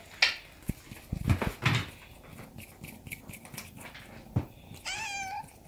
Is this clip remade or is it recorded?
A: recorded